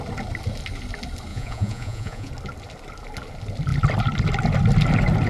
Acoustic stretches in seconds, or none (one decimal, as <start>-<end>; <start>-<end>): 0.0-1.3; 2.3-5.3